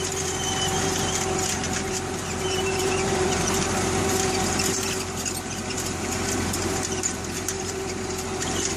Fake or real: fake